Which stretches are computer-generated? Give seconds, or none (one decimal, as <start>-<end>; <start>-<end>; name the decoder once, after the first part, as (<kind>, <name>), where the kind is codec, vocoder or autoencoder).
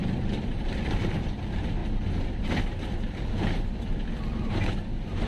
0.0-1.0 (vocoder, BigVGAN v2)